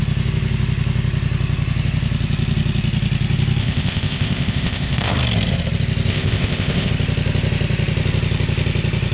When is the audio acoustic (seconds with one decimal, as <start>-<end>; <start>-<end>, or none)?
0.0-3.6; 5.1-6.1; 6.9-9.1